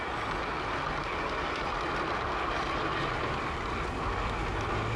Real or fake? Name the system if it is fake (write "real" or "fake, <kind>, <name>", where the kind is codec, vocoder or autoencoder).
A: real